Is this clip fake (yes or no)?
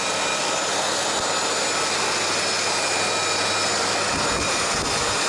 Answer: no